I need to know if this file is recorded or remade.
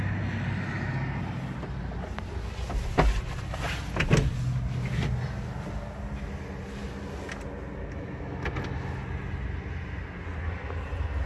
recorded